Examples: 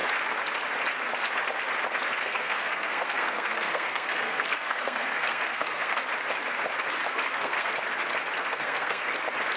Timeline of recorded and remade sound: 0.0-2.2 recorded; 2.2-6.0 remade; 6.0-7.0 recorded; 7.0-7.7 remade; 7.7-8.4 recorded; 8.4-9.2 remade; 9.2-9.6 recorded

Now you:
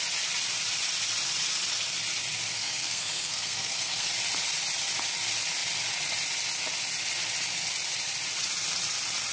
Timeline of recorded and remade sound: 0.0-2.5 recorded; 2.5-4.1 remade; 4.1-9.3 recorded

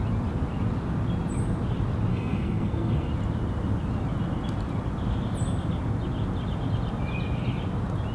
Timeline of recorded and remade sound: 0.0-2.1 recorded; 2.1-3.1 remade; 3.1-8.1 recorded

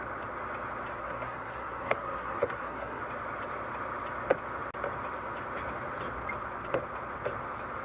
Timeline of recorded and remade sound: 0.0-1.0 recorded; 1.0-3.0 remade; 3.0-7.8 recorded

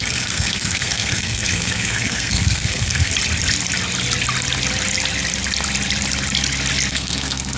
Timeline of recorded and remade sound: 0.0-3.1 remade; 3.1-6.9 recorded; 6.9-7.6 remade

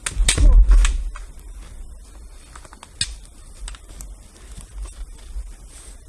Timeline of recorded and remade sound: 0.0-6.1 recorded